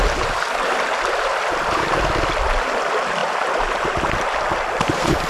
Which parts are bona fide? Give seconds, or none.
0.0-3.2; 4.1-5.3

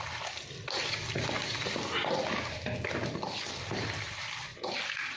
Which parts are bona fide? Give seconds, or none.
0.0-5.2

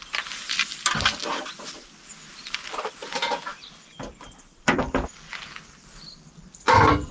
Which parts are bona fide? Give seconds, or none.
0.0-3.5

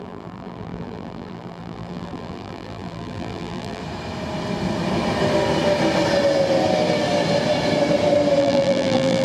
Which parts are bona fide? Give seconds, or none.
3.8-8.4

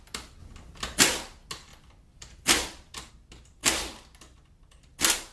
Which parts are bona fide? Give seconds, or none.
0.0-1.7; 3.1-5.3

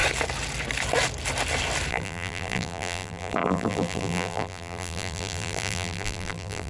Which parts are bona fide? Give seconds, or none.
0.0-1.9

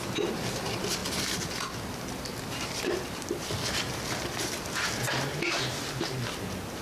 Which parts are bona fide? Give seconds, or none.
0.0-6.8